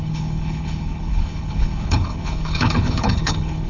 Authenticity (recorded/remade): remade